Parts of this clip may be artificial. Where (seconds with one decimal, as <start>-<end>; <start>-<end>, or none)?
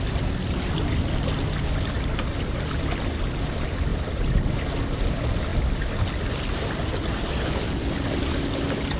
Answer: none